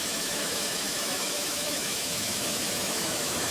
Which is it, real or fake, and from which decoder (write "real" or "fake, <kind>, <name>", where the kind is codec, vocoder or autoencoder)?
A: fake, autoencoder, DAC-VAE